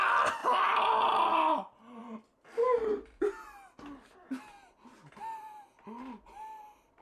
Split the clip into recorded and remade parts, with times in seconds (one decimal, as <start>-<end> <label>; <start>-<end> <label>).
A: 0.0-7.0 recorded